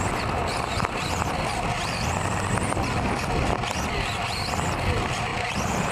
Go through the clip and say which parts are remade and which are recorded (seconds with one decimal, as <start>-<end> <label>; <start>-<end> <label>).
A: 0.0-0.4 recorded; 0.4-3.1 remade; 3.1-5.3 recorded; 5.3-5.9 remade